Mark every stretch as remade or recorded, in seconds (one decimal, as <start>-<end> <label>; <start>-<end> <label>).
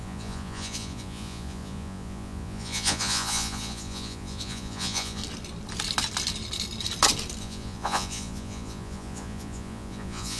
0.0-5.2 remade; 5.2-7.4 recorded; 7.4-10.4 remade